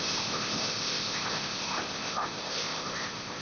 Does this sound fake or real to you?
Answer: fake